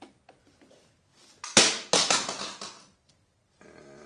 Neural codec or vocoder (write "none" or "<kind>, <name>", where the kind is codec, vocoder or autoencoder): none